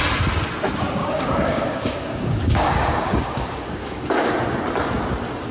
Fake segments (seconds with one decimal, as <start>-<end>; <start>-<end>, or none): 1.0-4.3